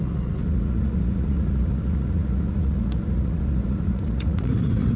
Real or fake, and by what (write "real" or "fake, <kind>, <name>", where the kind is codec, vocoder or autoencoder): fake, vocoder, Vocos